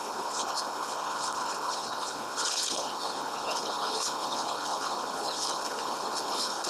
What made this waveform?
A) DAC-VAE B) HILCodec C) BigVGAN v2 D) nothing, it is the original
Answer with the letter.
B